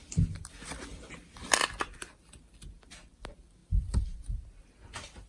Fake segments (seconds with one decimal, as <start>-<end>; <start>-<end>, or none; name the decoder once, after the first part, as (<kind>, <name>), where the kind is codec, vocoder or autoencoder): none